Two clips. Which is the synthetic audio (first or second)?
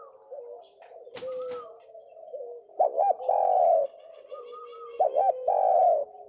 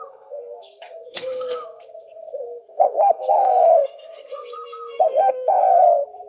second